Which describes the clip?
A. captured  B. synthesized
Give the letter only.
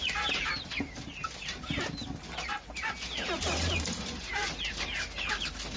A